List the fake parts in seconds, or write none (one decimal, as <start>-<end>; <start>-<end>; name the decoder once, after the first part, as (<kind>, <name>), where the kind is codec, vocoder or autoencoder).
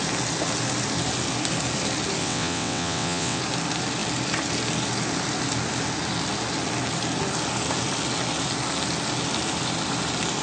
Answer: 2.2-3.4 (vocoder, WaveNeXt)